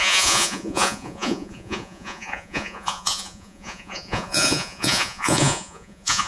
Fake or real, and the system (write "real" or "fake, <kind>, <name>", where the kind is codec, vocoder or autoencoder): fake, vocoder, Vocos